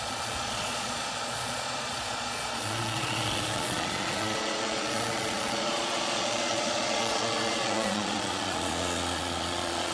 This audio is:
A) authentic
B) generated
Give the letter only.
B